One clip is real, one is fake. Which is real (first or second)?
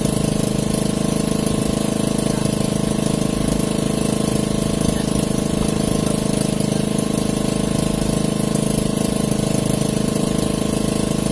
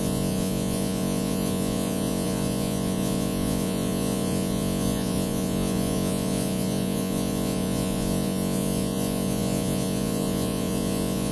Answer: first